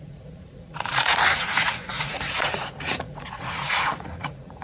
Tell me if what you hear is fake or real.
fake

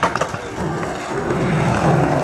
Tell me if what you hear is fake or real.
real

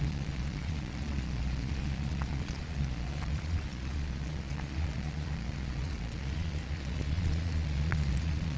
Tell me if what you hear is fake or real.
fake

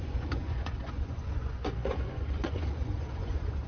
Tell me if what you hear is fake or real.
fake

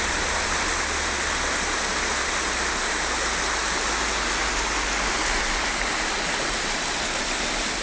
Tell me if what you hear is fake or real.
real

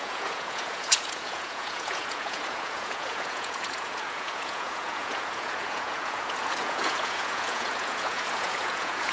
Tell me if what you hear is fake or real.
fake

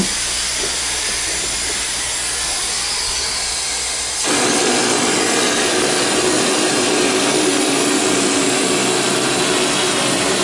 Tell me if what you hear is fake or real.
real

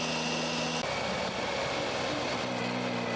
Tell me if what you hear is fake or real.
real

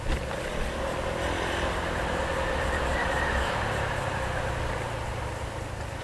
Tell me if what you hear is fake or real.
real